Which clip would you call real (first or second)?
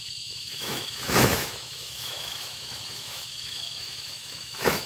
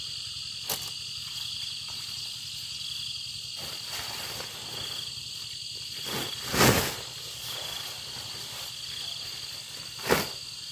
second